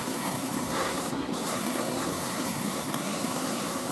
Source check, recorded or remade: remade